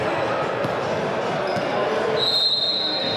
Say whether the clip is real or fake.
real